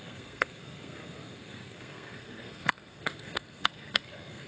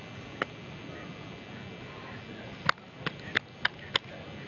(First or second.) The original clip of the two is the second